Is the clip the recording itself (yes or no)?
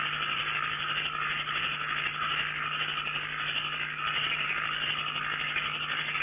yes